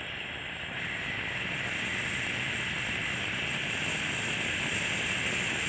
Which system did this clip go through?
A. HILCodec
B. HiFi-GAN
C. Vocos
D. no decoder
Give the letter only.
D